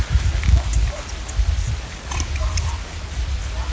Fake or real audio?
real